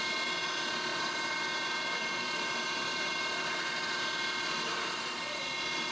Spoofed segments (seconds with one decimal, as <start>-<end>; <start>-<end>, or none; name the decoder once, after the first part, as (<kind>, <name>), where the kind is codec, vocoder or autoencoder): 0.9-4.0 (vocoder, BigVGAN v2); 4.7-5.4